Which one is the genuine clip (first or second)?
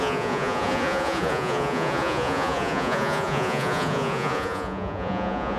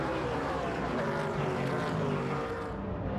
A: second